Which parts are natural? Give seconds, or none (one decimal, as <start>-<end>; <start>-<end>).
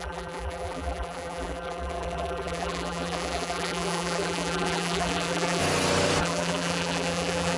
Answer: 5.6-6.2